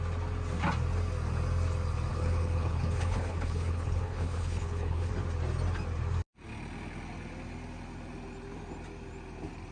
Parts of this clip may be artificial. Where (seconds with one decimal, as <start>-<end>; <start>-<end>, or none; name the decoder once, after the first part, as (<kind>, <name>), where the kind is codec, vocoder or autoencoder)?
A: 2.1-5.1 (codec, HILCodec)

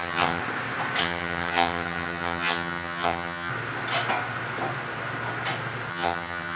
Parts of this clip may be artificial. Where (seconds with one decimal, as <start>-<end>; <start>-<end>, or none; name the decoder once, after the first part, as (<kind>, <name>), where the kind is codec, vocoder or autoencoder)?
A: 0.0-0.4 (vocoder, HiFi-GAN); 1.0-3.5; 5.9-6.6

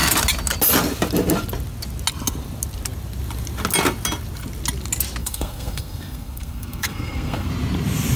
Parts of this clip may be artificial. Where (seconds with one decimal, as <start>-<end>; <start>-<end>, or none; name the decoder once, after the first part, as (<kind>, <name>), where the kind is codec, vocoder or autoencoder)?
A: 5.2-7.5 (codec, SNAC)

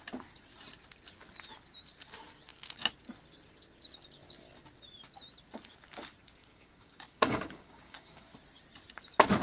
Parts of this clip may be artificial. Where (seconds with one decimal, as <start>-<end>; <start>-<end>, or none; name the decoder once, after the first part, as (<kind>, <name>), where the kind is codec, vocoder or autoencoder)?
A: 6.4-8.2 (codec, DAC)

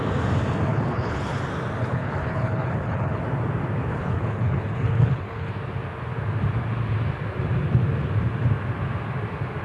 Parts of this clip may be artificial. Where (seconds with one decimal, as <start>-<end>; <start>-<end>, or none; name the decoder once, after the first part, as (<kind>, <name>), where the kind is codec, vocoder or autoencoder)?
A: 0.7-1.4 (codec, HILCodec); 1.8-3.2; 3.9-5.5

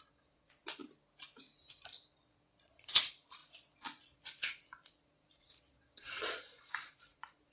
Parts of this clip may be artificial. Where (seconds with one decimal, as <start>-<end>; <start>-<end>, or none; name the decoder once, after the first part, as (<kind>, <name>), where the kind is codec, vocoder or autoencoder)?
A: 0.0-0.8 (vocoder, Vocos); 2.2-7.5

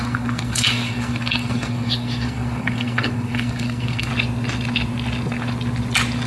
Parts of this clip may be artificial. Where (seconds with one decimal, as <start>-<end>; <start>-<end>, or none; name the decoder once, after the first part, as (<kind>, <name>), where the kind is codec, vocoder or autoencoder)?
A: 0.0-4.1 (codec, SNAC)

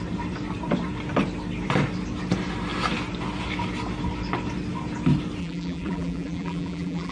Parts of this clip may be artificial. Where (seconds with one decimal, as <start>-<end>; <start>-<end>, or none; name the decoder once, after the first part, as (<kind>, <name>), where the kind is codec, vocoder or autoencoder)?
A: 5.4-7.1 (vocoder, BigVGAN v2)